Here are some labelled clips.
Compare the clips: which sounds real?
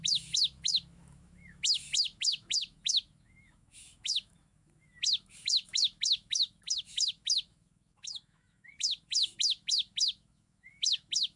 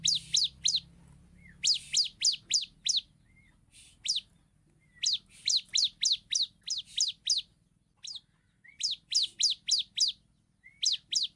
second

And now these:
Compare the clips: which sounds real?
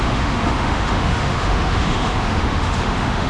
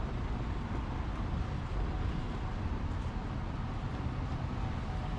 second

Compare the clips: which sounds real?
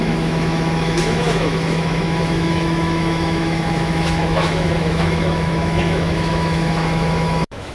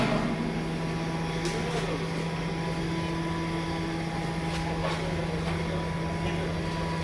second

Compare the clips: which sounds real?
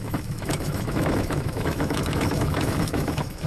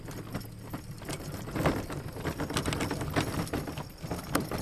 second